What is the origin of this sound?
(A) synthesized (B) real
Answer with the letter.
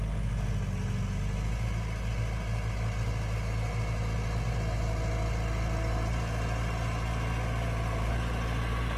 B